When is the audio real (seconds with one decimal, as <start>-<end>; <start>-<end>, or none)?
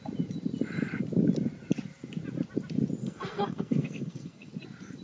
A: 0.0-3.0; 4.5-5.0